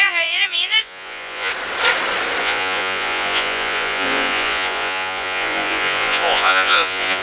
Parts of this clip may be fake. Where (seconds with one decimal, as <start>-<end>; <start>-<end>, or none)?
0.0-1.5; 2.4-7.2